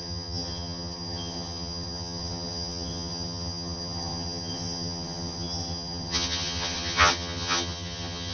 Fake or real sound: fake